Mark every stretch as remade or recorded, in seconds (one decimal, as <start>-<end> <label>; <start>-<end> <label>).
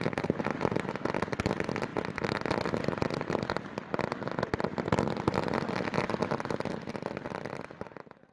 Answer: 0.0-8.3 recorded